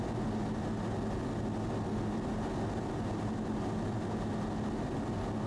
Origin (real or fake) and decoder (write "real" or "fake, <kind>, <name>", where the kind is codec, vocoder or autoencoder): real